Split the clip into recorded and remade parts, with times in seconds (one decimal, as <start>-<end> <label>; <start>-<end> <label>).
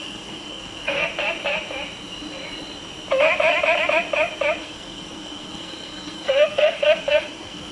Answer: 0.0-1.1 remade; 1.1-4.6 recorded; 4.6-7.7 remade